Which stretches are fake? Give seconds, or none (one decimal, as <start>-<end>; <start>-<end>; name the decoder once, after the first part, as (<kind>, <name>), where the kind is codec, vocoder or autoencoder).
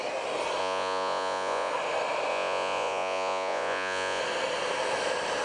0.6-1.7 (vocoder, Vocos); 2.3-4.2